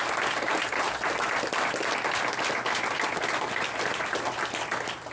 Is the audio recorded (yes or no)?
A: yes